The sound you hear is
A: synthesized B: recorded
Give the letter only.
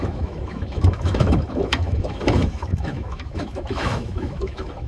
A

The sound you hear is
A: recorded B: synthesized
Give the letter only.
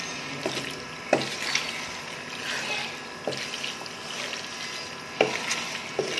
A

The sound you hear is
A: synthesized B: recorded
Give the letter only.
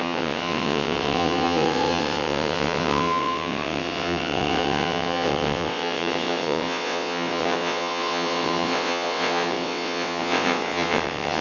A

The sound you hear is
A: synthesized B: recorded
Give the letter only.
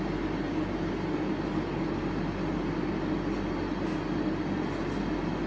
B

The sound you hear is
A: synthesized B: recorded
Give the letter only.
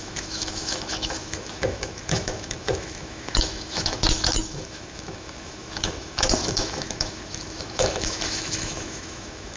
A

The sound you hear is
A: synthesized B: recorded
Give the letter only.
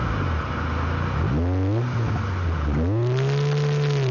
B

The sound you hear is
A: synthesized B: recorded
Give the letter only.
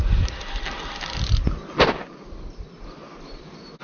B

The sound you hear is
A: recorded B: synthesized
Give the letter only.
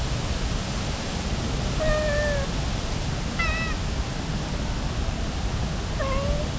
A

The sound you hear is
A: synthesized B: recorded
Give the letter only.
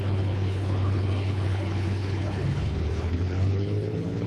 A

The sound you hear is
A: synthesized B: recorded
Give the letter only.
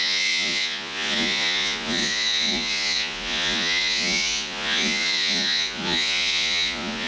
A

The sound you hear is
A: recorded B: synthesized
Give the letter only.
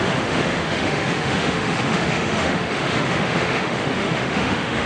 B